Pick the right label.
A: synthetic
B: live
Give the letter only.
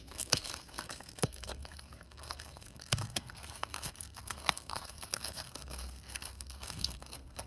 A